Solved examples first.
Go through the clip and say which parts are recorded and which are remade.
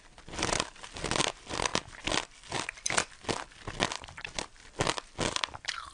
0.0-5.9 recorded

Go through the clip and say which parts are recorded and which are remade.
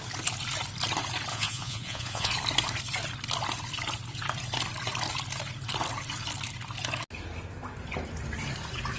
0.0-1.3 recorded; 1.3-2.3 remade; 2.3-9.0 recorded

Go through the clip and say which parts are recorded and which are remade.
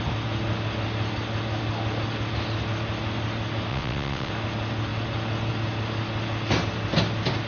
0.0-3.7 recorded; 3.7-4.3 remade; 4.3-7.5 recorded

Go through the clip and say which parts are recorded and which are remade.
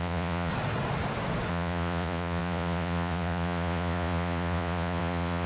0.0-0.5 remade; 0.5-1.5 recorded; 1.5-5.5 remade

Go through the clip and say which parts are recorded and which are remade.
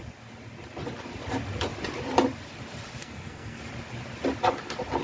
0.0-3.0 recorded; 3.0-3.6 remade; 3.6-5.0 recorded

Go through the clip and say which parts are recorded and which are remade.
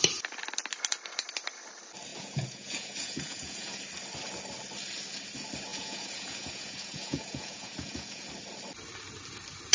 0.0-2.1 recorded; 2.1-3.8 remade; 3.8-5.7 recorded; 5.7-8.3 remade; 8.3-9.7 recorded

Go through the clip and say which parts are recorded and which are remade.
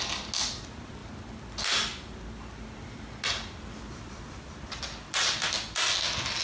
0.0-6.4 recorded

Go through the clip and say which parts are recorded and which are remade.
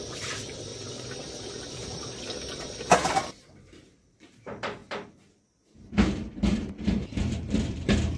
0.0-0.7 remade; 0.7-2.8 recorded; 2.8-4.8 remade; 4.8-5.5 recorded; 5.5-8.2 remade